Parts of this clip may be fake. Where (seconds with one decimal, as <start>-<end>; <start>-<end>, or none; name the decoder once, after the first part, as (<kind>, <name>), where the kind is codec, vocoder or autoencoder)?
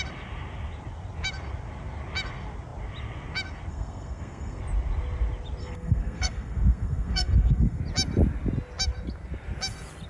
3.7-4.6 (codec, SNAC); 5.6-7.8